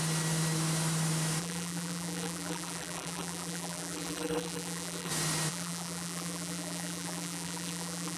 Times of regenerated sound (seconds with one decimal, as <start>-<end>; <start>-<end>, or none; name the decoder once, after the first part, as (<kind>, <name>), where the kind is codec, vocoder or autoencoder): 1.4-5.1 (vocoder, BigVGAN v2); 5.5-8.2